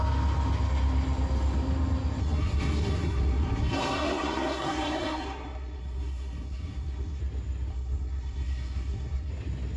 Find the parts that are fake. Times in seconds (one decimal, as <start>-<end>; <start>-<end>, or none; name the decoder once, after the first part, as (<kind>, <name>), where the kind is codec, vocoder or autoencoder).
2.2-7.2 (codec, SNAC); 7.7-9.3